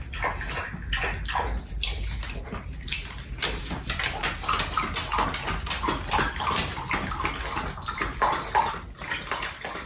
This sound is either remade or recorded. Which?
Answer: recorded